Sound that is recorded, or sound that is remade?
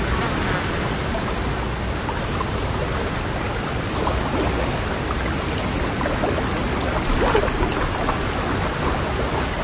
recorded